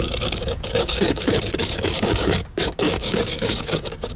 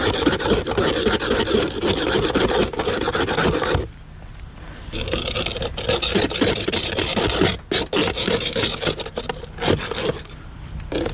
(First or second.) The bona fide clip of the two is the second